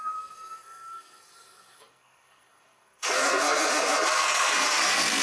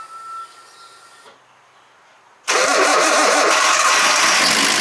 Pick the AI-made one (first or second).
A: first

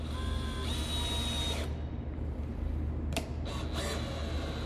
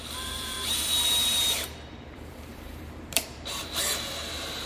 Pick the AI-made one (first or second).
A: second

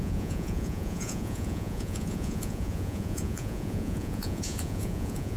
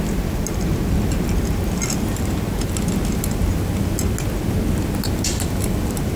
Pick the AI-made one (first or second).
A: first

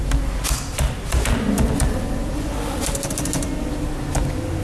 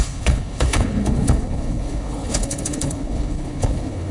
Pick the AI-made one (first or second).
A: second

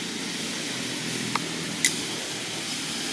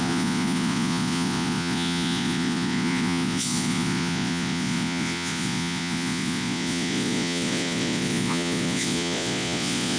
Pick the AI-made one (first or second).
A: second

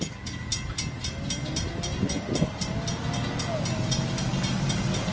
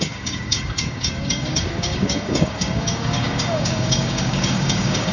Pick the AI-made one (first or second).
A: second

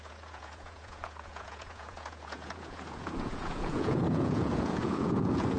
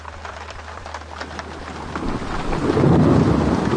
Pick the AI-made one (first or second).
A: first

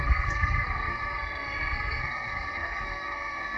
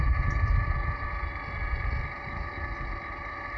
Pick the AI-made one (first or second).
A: first